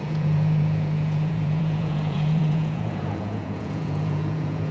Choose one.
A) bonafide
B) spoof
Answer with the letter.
B